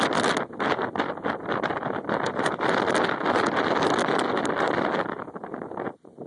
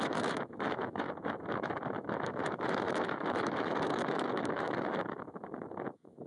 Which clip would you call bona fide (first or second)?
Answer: first